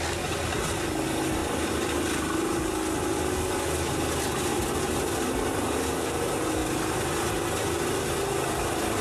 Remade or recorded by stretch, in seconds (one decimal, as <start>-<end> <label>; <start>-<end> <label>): 0.0-9.0 recorded